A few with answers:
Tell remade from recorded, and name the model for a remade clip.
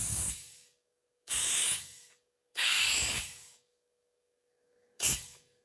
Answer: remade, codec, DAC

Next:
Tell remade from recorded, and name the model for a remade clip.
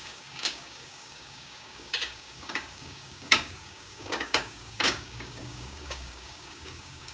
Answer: remade, codec, DAC